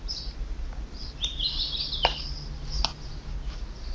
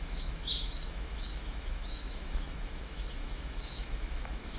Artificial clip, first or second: second